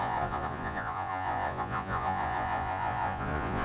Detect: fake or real fake